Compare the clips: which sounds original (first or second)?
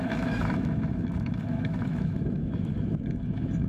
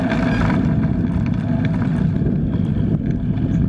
second